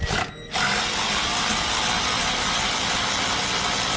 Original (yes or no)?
yes